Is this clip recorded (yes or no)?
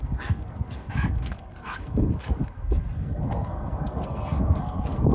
no